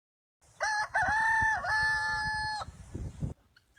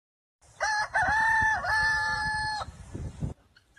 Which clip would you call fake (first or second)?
second